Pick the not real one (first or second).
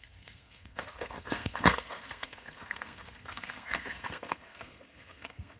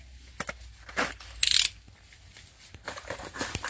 first